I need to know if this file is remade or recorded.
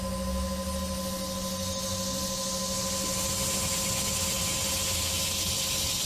recorded